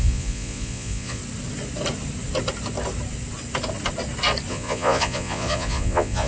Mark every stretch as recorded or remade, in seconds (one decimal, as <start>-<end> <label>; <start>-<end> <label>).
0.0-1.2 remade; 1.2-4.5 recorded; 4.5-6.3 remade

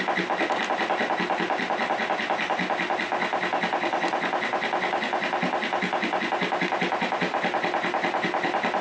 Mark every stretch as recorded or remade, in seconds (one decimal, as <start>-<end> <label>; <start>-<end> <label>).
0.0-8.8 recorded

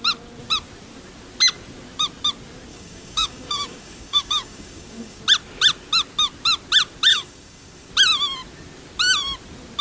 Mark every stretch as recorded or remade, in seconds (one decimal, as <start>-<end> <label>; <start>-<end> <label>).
0.0-2.7 recorded; 2.7-5.2 remade; 5.2-7.1 recorded; 7.1-7.9 remade; 7.9-9.8 recorded